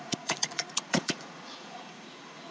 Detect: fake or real fake